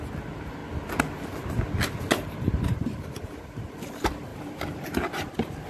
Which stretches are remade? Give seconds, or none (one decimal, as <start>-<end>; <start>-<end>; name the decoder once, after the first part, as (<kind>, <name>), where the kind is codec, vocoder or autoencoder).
0.0-0.6 (vocoder, BigVGAN v2); 2.4-5.7